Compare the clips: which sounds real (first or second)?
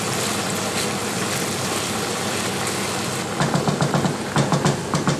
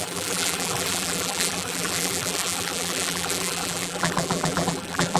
first